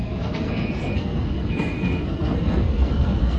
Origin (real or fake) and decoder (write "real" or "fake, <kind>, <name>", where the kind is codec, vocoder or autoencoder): fake, codec, SNAC